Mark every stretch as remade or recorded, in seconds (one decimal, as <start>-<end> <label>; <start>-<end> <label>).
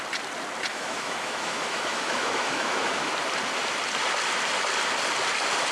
0.0-0.7 recorded; 0.7-3.1 remade; 3.1-5.7 recorded